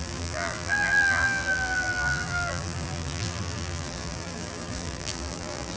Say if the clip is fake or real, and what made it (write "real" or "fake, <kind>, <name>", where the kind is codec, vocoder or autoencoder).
fake, vocoder, BigVGAN v2